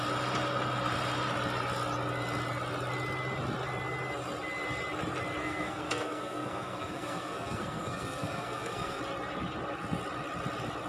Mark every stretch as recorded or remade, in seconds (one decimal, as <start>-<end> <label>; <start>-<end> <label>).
0.0-5.4 recorded; 5.4-9.0 remade; 9.0-10.9 recorded